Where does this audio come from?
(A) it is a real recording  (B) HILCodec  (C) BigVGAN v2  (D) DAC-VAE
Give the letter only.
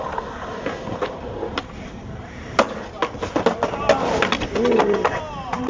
A